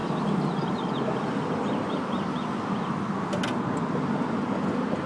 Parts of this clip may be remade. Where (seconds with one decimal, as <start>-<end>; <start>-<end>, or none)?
none

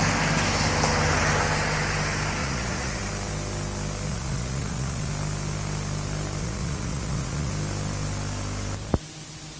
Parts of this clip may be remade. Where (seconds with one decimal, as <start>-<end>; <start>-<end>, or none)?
2.4-3.0; 4.1-5.1; 6.4-7.5

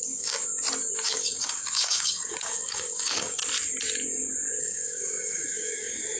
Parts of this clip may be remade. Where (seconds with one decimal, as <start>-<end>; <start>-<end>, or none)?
0.0-0.4; 1.0-3.4; 4.6-6.2

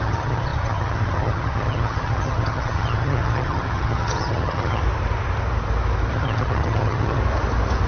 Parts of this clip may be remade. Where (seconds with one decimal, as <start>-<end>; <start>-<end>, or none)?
0.0-4.8; 6.1-7.2

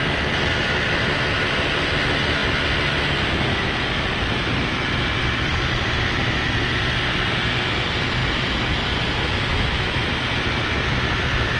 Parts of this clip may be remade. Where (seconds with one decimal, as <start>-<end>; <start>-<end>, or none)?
9.5-10.1

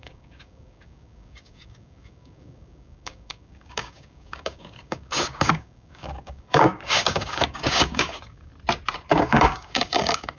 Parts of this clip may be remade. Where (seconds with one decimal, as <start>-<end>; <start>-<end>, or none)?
0.0-8.5; 9.1-10.4

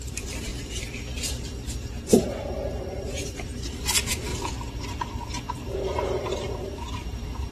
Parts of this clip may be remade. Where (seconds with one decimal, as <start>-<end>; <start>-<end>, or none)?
0.0-0.5; 1.3-4.3; 6.2-7.5